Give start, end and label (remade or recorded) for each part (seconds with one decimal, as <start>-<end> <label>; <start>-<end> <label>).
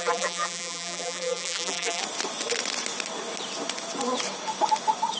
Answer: 0.0-2.0 remade; 2.0-5.2 recorded